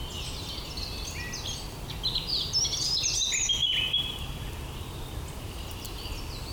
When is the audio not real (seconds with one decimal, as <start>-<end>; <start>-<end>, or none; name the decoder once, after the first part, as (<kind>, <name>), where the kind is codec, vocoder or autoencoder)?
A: none